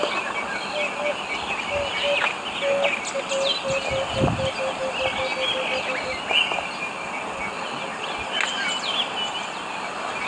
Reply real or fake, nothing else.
real